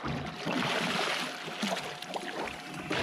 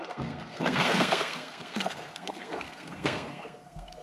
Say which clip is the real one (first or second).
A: first